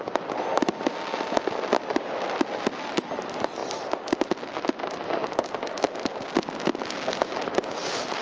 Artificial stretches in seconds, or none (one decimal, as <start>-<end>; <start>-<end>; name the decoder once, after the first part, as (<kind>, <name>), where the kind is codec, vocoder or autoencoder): none